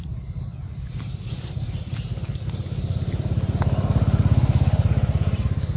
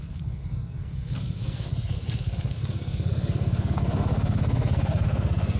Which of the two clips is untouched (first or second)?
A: first